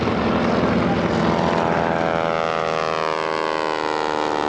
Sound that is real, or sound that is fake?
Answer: real